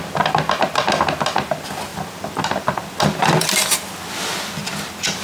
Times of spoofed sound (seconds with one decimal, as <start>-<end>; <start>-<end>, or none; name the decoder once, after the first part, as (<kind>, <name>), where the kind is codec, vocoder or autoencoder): 1.9-4.1 (vocoder, BigVGAN v2)